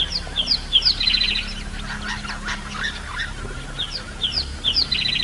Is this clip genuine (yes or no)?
yes